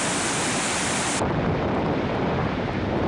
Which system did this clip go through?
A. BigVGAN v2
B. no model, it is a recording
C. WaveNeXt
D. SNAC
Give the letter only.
A